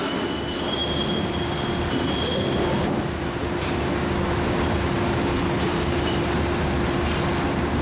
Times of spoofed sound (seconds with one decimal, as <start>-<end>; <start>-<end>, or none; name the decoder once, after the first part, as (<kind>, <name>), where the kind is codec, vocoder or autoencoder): none

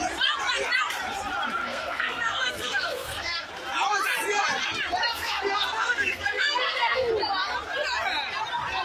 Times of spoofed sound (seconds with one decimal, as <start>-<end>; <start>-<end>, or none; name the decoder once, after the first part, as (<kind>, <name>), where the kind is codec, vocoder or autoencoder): 1.6-3.5 (codec, SNAC); 5.1-7.1

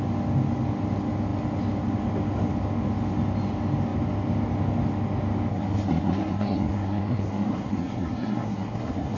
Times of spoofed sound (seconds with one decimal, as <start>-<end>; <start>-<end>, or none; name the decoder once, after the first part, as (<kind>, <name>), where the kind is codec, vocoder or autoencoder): 5.5-9.2 (codec, SNAC)

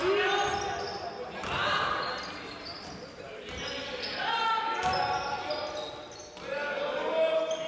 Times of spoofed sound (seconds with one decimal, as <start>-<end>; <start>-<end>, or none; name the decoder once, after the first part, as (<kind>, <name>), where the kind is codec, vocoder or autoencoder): none